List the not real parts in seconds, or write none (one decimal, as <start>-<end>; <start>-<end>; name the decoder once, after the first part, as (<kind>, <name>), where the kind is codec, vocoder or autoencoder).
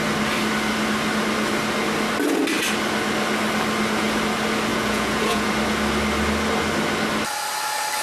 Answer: 4.7-5.5 (vocoder, Vocos)